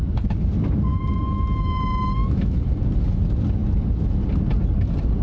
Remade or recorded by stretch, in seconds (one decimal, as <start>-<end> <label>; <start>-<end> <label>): 0.0-0.9 recorded; 0.9-1.8 remade; 1.8-2.2 recorded; 2.2-2.7 remade; 2.7-5.2 recorded